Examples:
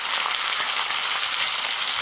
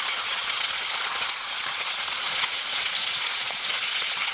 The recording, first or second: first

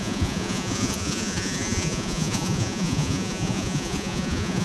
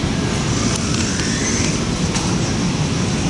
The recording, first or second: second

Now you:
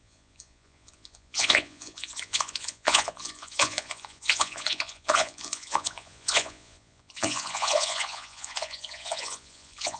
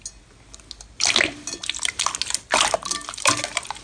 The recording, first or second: second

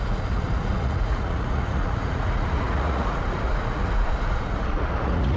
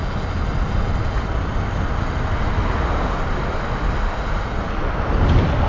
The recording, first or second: second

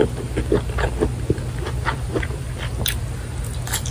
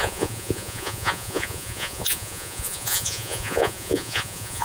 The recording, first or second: first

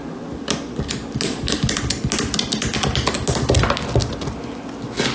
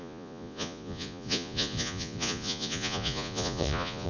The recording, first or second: first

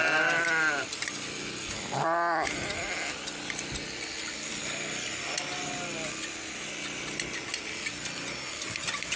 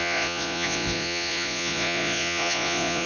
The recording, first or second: first